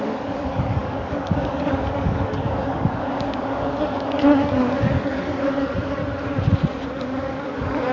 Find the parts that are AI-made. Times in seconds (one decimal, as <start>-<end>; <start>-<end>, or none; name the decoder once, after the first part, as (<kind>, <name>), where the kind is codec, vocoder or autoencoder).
0.0-6.0 (codec, DAC); 6.9-7.9

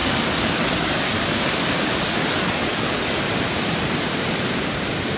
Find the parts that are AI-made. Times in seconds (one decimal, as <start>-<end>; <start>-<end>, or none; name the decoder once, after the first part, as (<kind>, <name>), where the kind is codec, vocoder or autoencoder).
0.0-3.0 (codec, DAC)

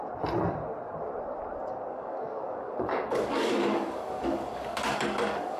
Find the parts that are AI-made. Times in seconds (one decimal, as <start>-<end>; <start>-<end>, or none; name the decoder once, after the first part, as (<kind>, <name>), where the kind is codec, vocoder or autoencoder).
1.9-5.6 (codec, DAC)

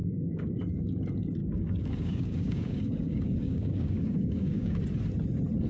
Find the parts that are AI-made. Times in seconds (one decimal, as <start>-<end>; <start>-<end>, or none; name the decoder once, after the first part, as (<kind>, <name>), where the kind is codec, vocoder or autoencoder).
0.0-0.6 (codec, DAC); 1.4-4.8

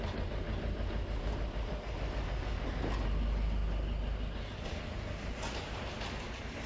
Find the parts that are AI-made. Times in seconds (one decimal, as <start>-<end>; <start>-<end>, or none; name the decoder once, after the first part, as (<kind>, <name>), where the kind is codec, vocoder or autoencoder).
none

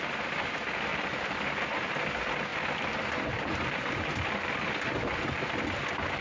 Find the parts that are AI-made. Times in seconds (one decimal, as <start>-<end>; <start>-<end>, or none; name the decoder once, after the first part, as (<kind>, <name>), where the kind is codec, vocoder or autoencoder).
none

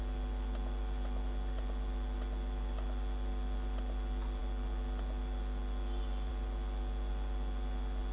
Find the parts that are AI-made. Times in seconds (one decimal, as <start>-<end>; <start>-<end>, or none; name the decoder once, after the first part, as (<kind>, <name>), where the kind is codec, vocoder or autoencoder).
none